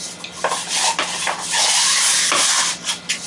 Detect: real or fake real